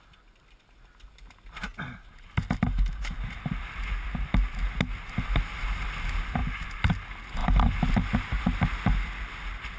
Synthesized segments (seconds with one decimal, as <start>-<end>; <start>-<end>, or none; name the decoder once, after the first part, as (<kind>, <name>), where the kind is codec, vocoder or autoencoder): none